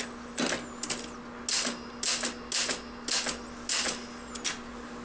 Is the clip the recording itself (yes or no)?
yes